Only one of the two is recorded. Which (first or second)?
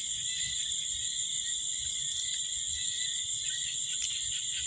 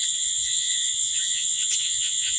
first